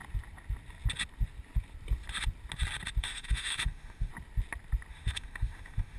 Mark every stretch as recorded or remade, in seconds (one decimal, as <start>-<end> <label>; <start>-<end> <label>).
0.0-3.0 recorded; 3.0-4.1 remade; 4.1-4.9 recorded; 4.9-6.0 remade